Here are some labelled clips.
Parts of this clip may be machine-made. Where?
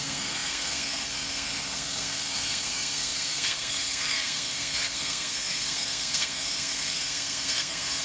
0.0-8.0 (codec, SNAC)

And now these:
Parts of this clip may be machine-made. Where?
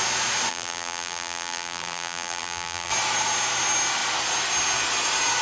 0.5-2.9 (vocoder, BigVGAN v2)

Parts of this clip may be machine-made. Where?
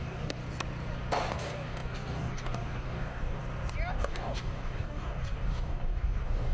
0.0-0.4 (codec, DAC); 1.3-3.4; 3.9-6.5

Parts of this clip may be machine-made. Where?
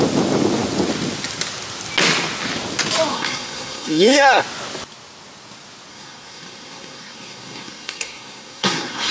3.1-4.4 (codec, SNAC); 5.9-9.1